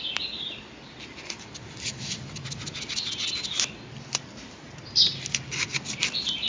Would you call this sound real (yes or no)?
yes